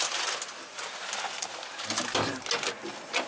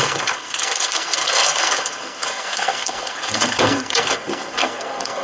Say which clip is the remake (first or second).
second